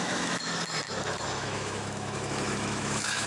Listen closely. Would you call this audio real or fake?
fake